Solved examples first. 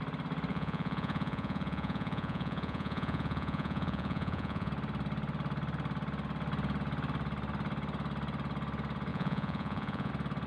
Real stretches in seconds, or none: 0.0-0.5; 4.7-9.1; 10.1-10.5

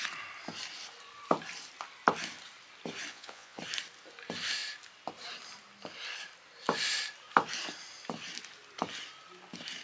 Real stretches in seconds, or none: 0.0-3.1; 3.6-9.8